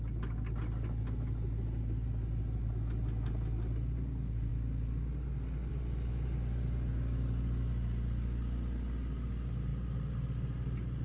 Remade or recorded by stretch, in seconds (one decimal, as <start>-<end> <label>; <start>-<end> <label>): 0.0-11.0 recorded